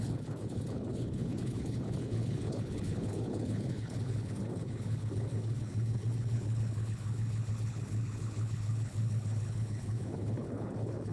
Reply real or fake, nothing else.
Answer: fake